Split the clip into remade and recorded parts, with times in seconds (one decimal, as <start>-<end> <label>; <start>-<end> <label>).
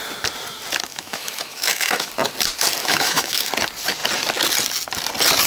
0.0-0.9 recorded; 0.9-2.1 remade; 2.1-2.8 recorded; 2.8-3.5 remade; 3.5-5.5 recorded